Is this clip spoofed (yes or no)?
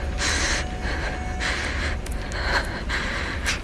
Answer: no